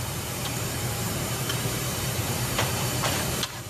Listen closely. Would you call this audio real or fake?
fake